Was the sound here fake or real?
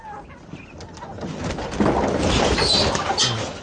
real